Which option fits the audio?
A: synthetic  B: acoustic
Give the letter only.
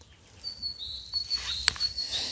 B